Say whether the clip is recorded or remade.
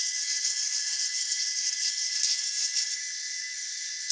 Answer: remade